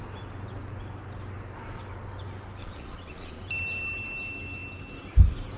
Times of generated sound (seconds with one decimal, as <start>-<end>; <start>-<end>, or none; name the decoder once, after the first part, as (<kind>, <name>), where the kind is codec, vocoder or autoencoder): 2.6-3.4 (vocoder, Vocos)